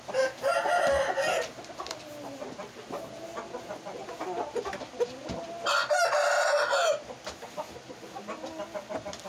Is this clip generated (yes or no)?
no